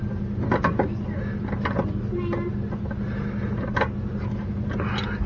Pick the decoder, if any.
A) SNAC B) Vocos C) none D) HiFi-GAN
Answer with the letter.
C